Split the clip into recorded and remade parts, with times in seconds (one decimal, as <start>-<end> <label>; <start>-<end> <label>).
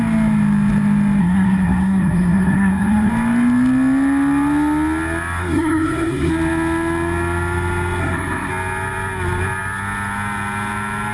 0.0-1.2 recorded; 1.2-3.1 remade; 3.1-5.4 recorded; 5.4-6.3 remade; 6.3-8.0 recorded; 8.0-8.5 remade; 8.5-11.1 recorded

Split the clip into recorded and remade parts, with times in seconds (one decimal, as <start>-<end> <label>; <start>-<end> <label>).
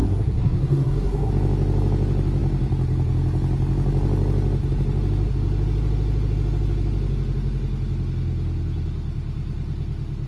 0.0-1.3 remade; 1.3-10.3 recorded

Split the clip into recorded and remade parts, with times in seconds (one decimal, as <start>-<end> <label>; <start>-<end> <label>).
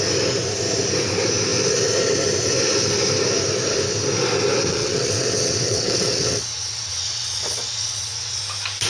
0.0-4.7 recorded; 4.7-8.4 remade; 8.4-8.9 recorded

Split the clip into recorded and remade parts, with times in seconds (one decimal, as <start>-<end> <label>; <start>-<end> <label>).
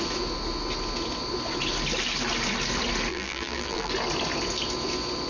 0.0-3.1 recorded; 3.1-3.9 remade; 3.9-5.3 recorded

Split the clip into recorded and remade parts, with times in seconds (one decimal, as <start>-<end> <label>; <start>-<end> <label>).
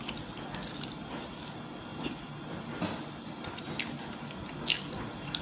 0.0-5.4 recorded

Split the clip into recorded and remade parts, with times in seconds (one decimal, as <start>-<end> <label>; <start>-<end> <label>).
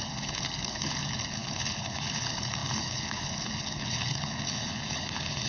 0.0-5.5 remade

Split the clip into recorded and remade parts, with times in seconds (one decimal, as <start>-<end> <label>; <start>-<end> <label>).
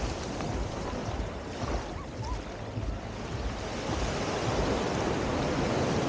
0.0-1.0 recorded; 1.0-1.6 remade; 1.6-6.1 recorded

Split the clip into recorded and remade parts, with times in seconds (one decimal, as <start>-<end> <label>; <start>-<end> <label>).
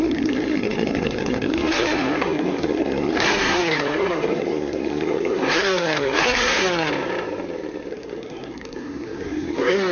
0.0-6.9 remade; 6.9-7.9 recorded; 7.9-9.9 remade